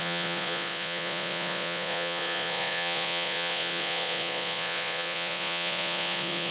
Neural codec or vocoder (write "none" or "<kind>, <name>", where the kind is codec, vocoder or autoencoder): vocoder, Vocos